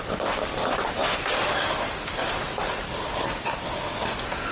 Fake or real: real